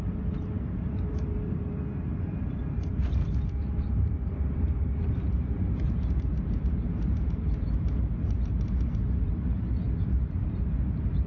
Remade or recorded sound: remade